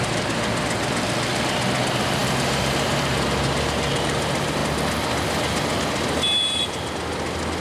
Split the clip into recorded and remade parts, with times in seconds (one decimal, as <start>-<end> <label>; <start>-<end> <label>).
0.0-0.5 remade; 0.5-1.8 recorded; 1.8-4.6 remade; 4.6-7.6 recorded